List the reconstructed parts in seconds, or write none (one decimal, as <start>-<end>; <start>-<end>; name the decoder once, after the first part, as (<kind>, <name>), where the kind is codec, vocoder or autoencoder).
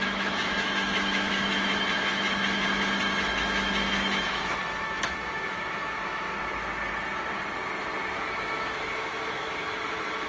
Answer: 0.0-6.3 (autoencoder, DAC-VAE); 8.2-10.3